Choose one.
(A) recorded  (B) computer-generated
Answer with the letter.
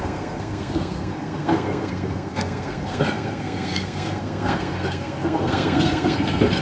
B